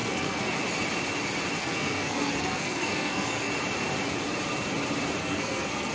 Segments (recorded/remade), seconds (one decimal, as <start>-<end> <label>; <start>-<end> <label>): 0.0-0.5 remade; 0.5-1.6 recorded; 1.6-3.5 remade; 3.5-5.2 recorded; 5.2-5.9 remade